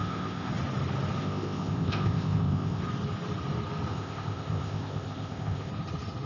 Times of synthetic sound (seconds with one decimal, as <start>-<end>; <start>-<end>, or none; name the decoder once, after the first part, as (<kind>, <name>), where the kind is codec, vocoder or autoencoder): 0.0-0.5 (codec, ZipCodec); 1.2-2.8; 3.9-5.7